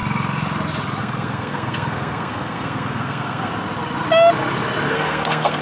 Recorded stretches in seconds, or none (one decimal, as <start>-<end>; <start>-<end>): 0.0-1.0; 3.5-4.9